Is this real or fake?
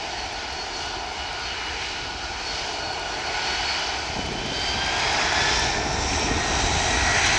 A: real